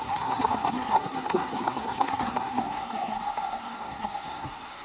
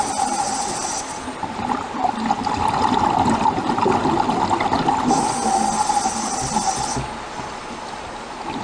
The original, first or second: second